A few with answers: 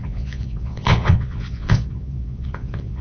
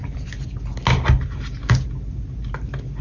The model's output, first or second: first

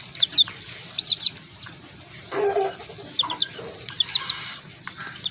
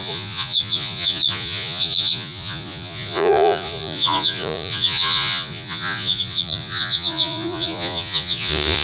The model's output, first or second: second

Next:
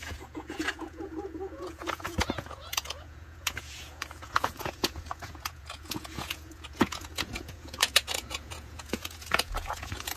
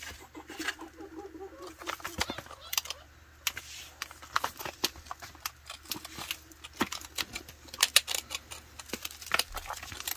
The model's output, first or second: first